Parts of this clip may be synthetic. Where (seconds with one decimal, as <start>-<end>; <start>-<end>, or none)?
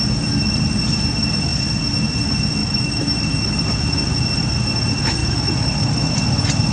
2.6-3.6; 5.2-6.1